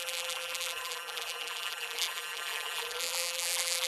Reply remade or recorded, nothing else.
remade